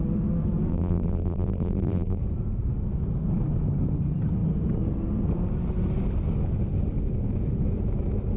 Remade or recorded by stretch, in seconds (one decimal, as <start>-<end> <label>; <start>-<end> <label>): 0.0-0.7 recorded; 0.7-2.2 remade; 2.2-8.4 recorded